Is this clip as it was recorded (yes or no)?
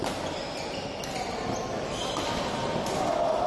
yes